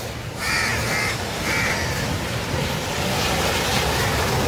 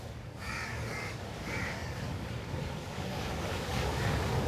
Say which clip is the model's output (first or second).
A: second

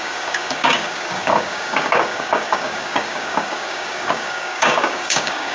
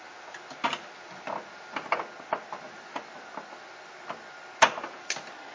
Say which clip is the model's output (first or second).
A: first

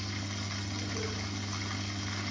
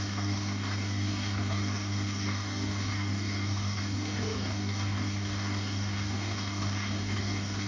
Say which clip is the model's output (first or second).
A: second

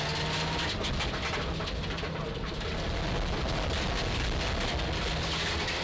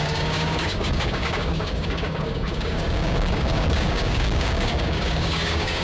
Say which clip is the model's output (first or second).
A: second